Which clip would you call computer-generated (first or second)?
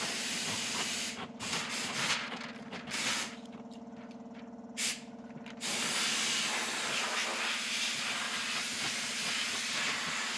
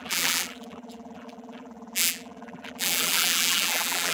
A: second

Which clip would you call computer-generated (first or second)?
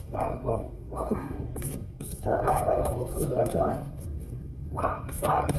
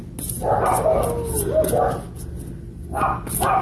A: first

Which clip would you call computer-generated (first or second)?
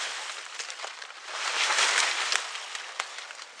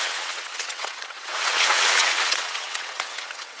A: second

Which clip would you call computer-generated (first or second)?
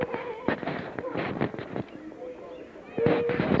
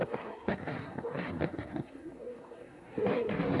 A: second